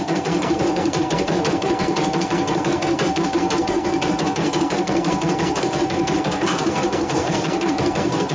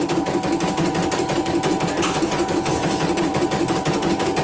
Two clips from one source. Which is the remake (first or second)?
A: first